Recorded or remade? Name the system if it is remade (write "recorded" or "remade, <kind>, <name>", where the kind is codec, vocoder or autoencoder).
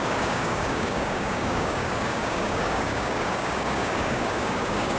remade, codec, DAC